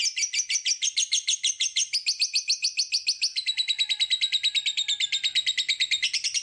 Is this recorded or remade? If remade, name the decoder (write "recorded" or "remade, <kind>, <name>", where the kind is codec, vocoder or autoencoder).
recorded